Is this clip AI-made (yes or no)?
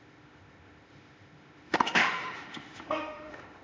yes